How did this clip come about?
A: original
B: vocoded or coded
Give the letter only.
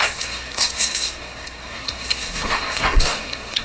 B